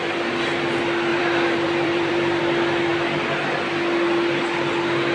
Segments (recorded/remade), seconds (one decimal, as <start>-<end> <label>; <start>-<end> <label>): 0.0-1.1 recorded; 1.1-2.4 remade; 2.4-5.1 recorded